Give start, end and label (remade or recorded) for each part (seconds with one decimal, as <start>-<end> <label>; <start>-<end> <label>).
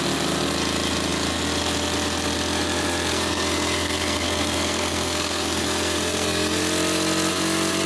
0.0-3.1 recorded; 3.1-6.6 remade; 6.6-7.9 recorded